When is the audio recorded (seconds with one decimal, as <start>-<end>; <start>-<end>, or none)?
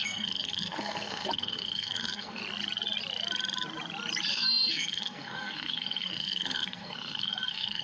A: 2.4-4.3